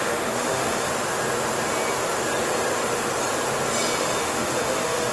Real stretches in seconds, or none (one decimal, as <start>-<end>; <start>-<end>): 0.9-4.0